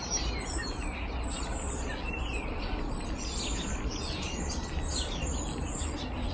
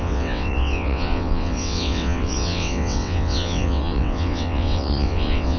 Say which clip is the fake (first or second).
second